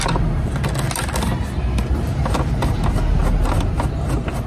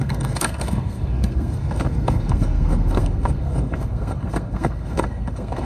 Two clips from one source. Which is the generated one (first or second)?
second